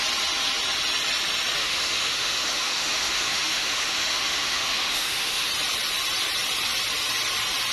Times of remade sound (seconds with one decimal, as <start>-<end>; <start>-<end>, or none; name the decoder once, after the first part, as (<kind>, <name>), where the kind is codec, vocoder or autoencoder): 1.6-5.5 (autoencoder, DAC-VAE)